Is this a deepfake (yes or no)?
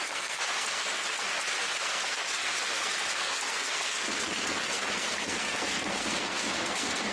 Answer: yes